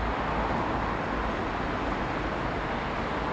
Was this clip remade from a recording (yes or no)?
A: no